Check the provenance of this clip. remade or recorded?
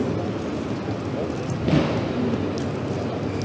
recorded